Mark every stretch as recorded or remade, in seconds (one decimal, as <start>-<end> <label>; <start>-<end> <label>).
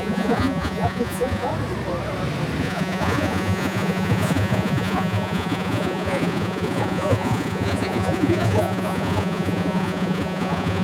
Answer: 0.0-1.5 remade; 1.5-2.6 recorded; 2.6-10.8 remade